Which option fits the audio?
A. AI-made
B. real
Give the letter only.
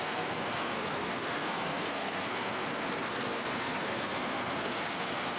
A